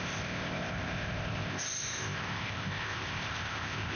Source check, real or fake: fake